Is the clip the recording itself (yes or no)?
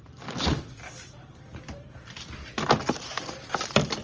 no